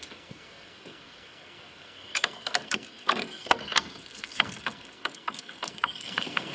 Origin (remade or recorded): remade